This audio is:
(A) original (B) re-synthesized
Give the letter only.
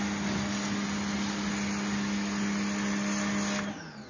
A